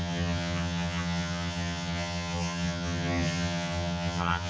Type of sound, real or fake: fake